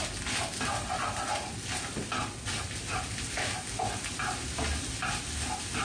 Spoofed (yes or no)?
no